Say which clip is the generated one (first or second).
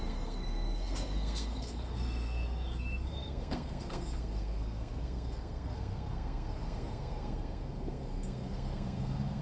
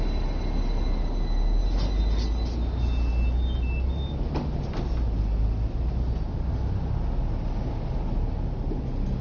first